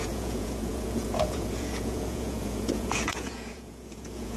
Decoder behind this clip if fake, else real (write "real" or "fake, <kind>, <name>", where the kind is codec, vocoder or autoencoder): fake, vocoder, Vocos